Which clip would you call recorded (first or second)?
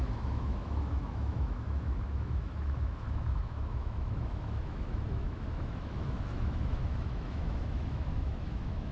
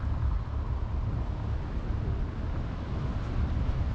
second